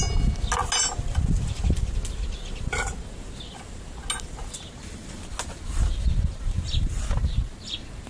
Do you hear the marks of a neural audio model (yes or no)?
no